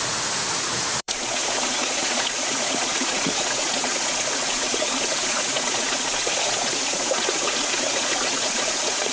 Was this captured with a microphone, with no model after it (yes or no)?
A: no